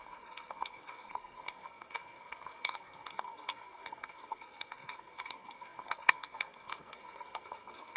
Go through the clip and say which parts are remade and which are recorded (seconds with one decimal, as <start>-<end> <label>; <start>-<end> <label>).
0.0-8.0 remade